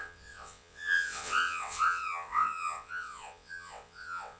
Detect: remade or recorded remade